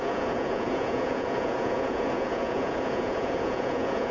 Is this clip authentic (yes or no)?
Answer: no